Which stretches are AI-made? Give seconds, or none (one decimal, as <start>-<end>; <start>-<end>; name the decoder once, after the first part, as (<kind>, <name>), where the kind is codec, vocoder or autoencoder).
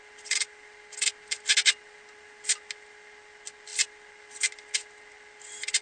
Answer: none